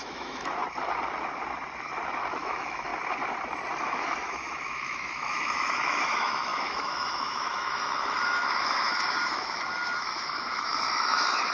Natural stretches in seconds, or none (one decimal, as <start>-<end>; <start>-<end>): 0.6-2.3; 2.9-3.8